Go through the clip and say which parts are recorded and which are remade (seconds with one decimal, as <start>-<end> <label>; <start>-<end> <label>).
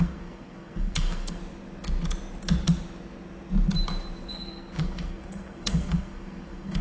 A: 0.0-1.4 remade; 1.4-4.3 recorded; 4.3-6.8 remade